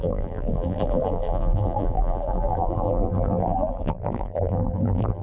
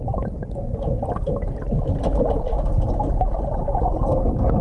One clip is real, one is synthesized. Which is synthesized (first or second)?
first